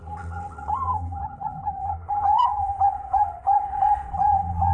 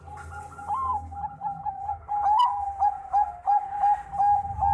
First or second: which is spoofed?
first